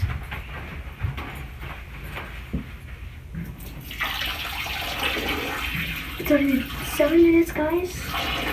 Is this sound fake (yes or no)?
no